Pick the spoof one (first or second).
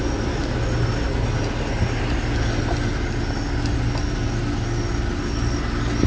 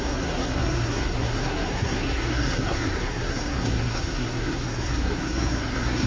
second